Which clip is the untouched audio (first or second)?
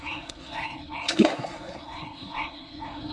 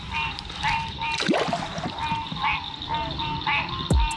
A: second